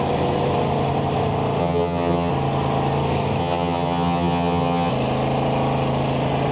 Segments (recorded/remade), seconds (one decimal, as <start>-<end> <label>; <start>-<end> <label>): 0.0-1.6 recorded; 1.6-2.3 remade; 2.3-3.4 recorded; 3.4-4.9 remade; 4.9-6.5 recorded